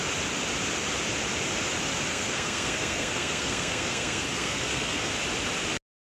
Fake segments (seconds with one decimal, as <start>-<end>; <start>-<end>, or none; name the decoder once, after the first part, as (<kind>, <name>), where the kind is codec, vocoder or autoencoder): 2.1-5.1 (codec, SNAC)

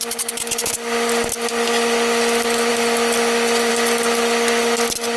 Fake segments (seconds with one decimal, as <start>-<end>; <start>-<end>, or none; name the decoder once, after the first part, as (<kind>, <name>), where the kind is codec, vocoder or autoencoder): none